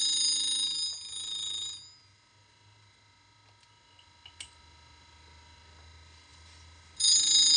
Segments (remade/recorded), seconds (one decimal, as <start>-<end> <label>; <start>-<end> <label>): 0.0-7.6 recorded

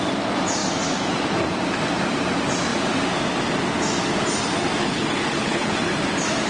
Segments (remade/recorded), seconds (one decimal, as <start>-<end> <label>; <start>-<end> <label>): 0.0-4.8 recorded; 4.8-5.7 remade; 5.7-6.5 recorded

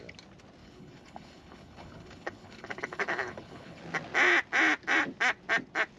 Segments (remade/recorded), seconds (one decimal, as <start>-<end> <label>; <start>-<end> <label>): 0.0-0.6 recorded; 0.6-3.8 remade; 3.8-6.0 recorded

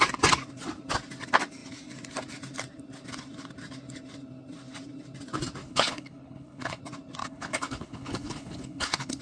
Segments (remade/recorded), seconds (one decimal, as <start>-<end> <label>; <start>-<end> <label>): 0.0-5.6 recorded; 5.6-6.8 remade; 6.8-7.2 recorded; 7.2-9.2 remade

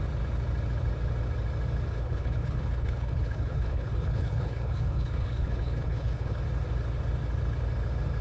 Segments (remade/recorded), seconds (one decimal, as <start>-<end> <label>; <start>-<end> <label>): 0.0-1.9 recorded; 1.9-6.4 remade; 6.4-8.2 recorded